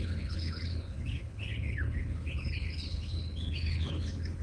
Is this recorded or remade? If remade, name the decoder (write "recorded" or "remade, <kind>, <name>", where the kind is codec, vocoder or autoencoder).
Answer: remade, codec, HILCodec